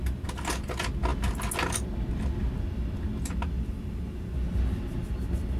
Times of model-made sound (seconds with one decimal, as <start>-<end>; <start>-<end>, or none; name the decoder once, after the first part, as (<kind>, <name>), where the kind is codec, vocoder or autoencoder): none

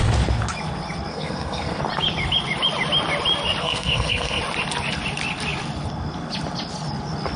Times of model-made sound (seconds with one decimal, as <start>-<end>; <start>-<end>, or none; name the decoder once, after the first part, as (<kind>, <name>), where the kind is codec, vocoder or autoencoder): 1.1-1.8 (codec, SNAC); 3.6-4.4

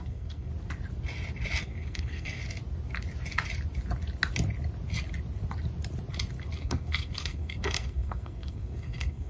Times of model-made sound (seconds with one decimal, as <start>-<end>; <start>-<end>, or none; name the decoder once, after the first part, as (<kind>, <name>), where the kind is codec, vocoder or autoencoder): 0.0-0.5 (codec, SNAC); 1.6-2.4; 6.6-9.3

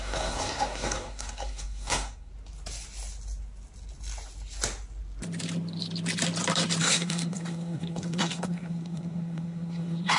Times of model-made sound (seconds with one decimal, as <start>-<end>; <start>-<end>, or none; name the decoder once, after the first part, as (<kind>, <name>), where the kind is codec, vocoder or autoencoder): 0.0-2.3 (codec, SNAC); 6.8-10.2

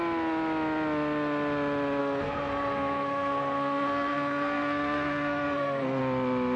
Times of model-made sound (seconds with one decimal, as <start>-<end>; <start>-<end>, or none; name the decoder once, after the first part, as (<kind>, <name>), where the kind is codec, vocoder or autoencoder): 2.0-6.0 (codec, SNAC)